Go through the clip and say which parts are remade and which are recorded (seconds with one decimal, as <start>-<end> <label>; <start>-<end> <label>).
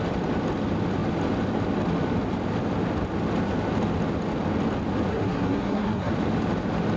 0.0-5.1 recorded; 5.1-6.1 remade; 6.1-7.0 recorded